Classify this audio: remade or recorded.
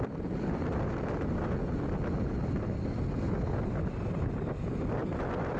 recorded